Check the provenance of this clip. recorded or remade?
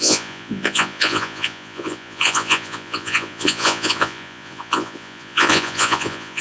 remade